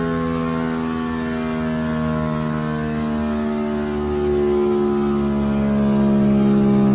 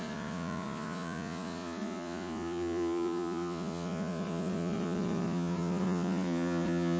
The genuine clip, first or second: first